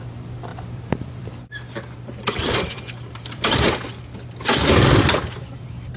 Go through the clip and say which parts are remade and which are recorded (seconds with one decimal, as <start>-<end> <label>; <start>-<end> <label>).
0.0-0.5 recorded; 0.5-3.9 remade; 3.9-6.0 recorded